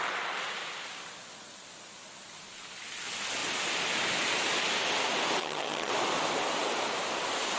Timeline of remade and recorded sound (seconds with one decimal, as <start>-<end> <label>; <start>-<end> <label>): 0.0-5.4 recorded; 5.4-5.9 remade; 5.9-7.6 recorded